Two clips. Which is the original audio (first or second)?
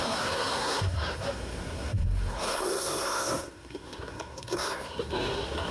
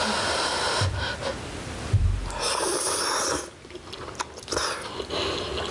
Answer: second